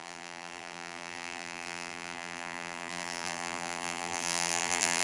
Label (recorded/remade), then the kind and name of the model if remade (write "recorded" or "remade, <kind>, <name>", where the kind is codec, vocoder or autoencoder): remade, vocoder, BigVGAN v2